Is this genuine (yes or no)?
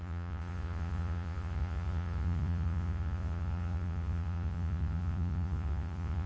no